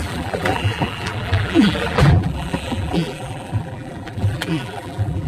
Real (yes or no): no